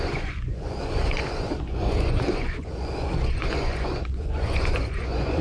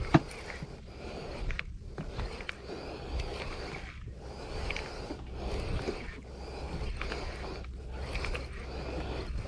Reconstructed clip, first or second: first